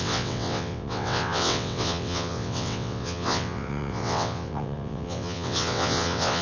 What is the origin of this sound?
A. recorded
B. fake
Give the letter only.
B